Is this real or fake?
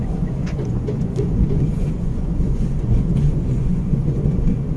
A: fake